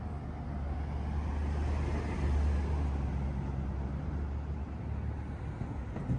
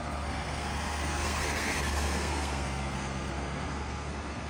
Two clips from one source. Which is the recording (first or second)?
first